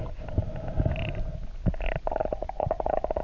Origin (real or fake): real